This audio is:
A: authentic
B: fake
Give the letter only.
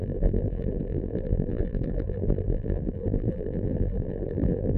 B